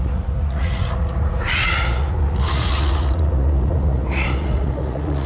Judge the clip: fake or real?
fake